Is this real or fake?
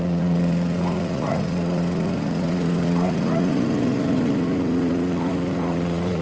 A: fake